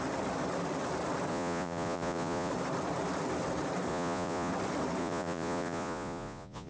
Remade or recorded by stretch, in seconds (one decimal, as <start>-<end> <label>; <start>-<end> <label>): 0.0-1.3 recorded; 1.3-2.5 remade; 2.5-3.9 recorded; 3.9-4.5 remade; 4.5-5.0 recorded; 5.0-6.7 remade